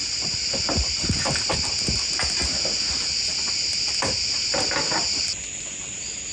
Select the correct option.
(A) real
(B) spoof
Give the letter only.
A